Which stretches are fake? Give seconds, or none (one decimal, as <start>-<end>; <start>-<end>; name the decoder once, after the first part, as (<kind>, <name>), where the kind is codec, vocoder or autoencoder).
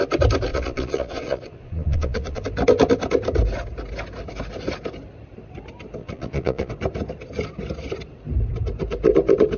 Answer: 0.5-2.4 (vocoder, Vocos); 6.0-6.7